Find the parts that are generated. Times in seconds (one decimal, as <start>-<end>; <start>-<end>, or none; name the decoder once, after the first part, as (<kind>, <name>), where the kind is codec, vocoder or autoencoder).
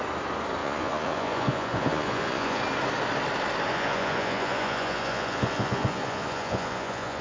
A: 0.6-2.6 (vocoder, Vocos); 3.7-7.2